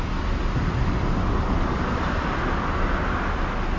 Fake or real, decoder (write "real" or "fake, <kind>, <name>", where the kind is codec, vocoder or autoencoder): real